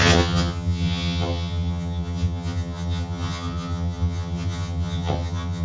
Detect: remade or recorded remade